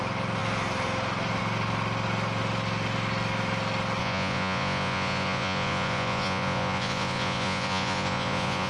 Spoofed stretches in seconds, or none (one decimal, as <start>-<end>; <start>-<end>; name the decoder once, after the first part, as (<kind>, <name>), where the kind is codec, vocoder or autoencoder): 4.0-8.7 (vocoder, Vocos)